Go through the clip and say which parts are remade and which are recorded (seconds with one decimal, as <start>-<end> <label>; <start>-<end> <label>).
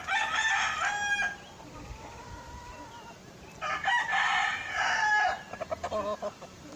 0.0-6.8 recorded